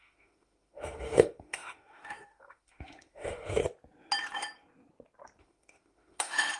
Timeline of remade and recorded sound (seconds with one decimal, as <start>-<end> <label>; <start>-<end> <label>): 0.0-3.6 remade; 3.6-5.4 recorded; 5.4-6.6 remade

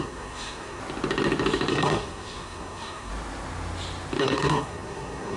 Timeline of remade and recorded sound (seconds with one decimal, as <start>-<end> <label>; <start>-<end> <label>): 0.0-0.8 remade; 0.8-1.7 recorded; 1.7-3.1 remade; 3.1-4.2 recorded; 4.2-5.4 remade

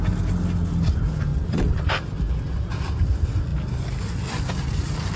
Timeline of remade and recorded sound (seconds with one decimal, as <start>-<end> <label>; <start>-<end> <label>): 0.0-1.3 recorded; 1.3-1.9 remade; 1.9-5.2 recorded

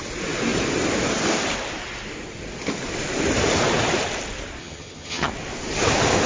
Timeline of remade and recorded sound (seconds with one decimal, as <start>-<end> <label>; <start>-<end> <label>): 0.0-4.6 recorded; 4.6-5.3 remade; 5.3-6.3 recorded

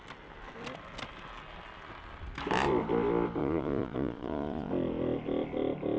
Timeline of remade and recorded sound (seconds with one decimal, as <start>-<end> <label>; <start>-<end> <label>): 0.0-3.4 recorded; 3.4-4.7 remade; 4.7-6.0 recorded

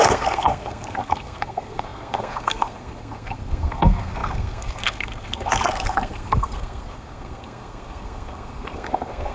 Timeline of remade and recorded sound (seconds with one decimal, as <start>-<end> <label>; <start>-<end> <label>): 0.0-9.3 remade